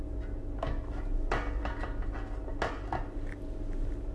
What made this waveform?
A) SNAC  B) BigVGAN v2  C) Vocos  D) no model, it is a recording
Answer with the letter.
D